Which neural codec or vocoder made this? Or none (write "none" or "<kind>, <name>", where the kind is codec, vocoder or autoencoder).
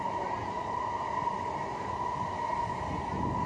none